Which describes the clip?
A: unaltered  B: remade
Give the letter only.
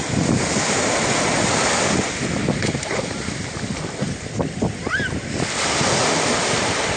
A